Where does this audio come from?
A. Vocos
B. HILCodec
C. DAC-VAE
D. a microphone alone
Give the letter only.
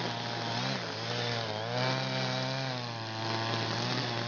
D